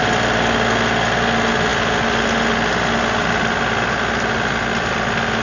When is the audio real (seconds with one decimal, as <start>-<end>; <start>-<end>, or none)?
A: 0.0-5.4